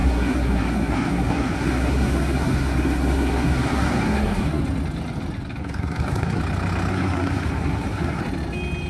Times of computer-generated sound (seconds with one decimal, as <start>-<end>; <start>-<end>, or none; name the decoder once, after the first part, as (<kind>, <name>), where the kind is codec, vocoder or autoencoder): 0.0-4.6 (codec, SNAC); 5.6-6.4; 6.9-8.2